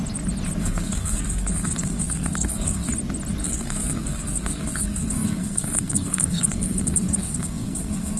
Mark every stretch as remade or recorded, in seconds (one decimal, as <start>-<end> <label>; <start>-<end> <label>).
0.0-0.6 recorded; 0.6-2.9 remade; 2.9-3.4 recorded; 3.4-8.2 remade